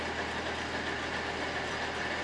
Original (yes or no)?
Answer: yes